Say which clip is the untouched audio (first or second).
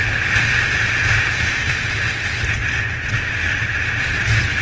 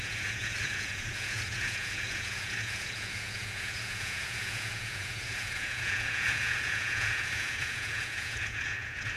first